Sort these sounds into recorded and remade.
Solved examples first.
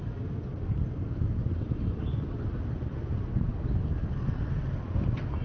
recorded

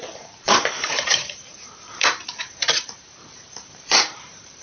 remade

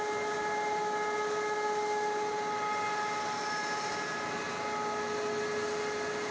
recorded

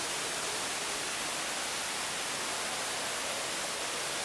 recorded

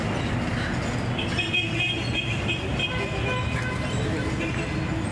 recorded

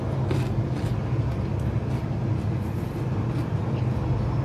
recorded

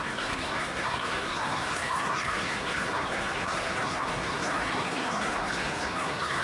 remade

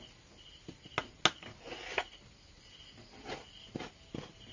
recorded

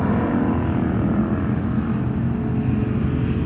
recorded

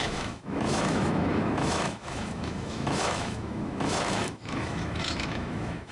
remade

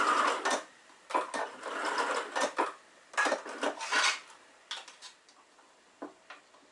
recorded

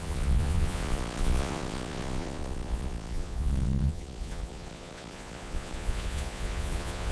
remade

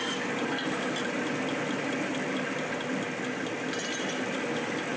recorded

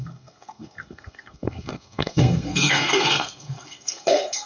remade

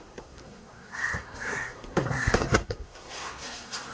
remade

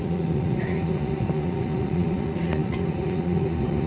remade